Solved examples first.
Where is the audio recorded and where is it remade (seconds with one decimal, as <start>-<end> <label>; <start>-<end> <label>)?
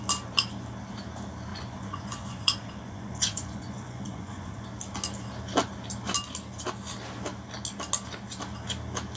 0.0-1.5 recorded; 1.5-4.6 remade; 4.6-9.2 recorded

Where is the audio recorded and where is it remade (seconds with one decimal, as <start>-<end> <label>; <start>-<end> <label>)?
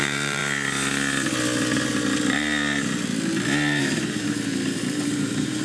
0.0-0.4 remade; 0.4-3.8 recorded; 3.8-5.6 remade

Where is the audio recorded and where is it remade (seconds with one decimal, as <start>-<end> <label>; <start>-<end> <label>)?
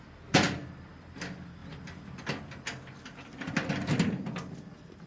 0.0-5.1 recorded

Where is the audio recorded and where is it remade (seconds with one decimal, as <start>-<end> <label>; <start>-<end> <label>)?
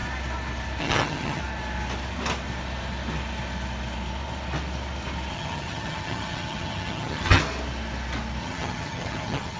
0.0-0.8 recorded; 0.8-1.4 remade; 1.4-5.3 recorded; 5.3-7.4 remade; 7.4-8.4 recorded; 8.4-9.6 remade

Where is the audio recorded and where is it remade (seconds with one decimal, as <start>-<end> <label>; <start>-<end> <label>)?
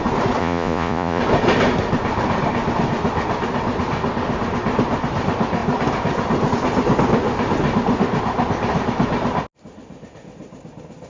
0.0-0.4 recorded; 0.4-1.2 remade; 1.2-11.1 recorded